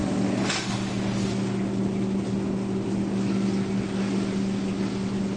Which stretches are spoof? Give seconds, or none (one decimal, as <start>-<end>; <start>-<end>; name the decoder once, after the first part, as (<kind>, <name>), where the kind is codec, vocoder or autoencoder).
0.0-0.9 (codec, DAC); 3.0-4.7